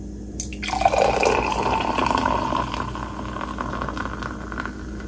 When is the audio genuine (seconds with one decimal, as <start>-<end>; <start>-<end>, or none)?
0.0-5.1